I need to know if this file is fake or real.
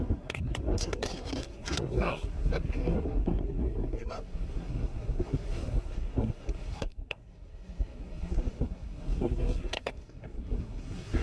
fake